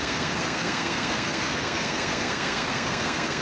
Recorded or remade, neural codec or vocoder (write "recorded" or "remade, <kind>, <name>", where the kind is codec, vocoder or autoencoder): remade, codec, SNAC